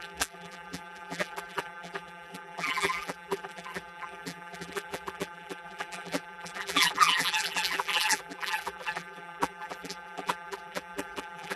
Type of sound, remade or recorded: remade